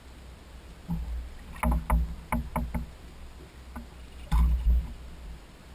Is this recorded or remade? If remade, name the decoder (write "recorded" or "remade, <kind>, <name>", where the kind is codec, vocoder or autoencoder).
recorded